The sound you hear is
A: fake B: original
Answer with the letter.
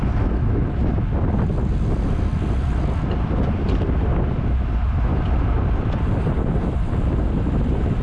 B